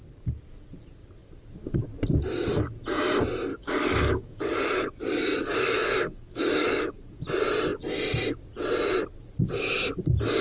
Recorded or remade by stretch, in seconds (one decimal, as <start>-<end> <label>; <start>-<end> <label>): 0.0-3.5 recorded; 3.5-7.2 remade; 7.2-10.4 recorded